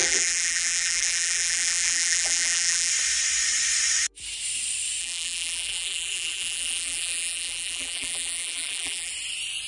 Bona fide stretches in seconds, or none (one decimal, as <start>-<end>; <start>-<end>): 2.9-5.0; 9.1-9.7